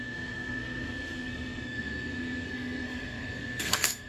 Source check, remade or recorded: remade